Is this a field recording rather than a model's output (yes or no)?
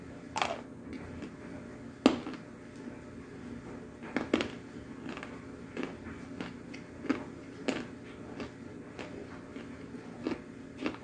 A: yes